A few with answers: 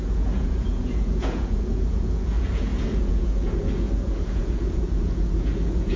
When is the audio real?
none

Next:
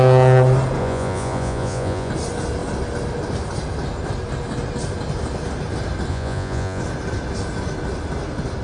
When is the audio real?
0.0-0.8; 2.1-6.1; 6.8-8.6

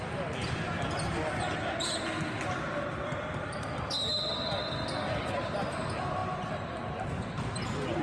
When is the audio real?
0.0-8.0

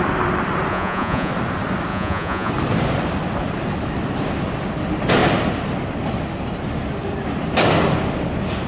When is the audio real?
0.0-0.7; 1.3-1.9; 2.5-8.7